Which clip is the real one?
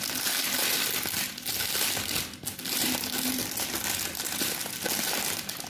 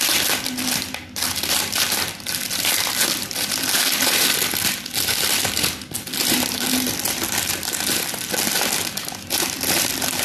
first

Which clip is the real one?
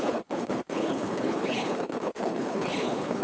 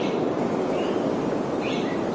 second